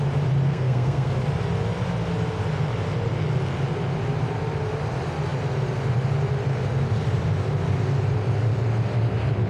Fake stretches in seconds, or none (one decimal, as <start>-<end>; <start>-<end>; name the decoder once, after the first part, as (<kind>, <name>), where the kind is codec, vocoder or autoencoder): 0.5-1.1 (codec, SNAC)